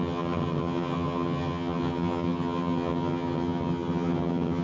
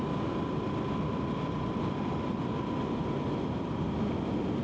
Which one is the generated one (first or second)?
first